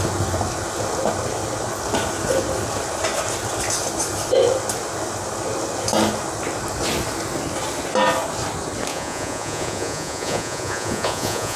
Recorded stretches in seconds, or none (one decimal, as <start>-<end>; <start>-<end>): 0.0-8.9

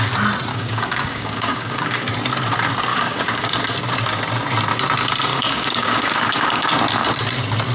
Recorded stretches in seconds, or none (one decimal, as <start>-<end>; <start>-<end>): 0.0-0.5; 2.1-2.9; 3.5-5.3; 6.7-7.7

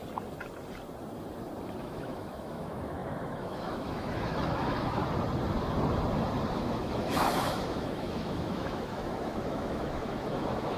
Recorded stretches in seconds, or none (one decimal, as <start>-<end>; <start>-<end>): 0.0-1.8; 5.0-6.5

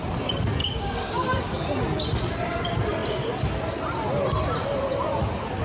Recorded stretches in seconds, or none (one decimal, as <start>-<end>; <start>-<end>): 0.0-0.6; 1.4-5.6

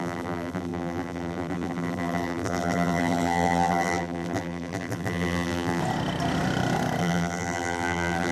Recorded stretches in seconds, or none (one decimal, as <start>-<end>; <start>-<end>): 5.8-7.0

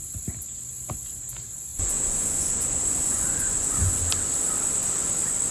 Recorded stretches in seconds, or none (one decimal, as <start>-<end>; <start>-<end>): 0.0-1.7; 4.0-5.5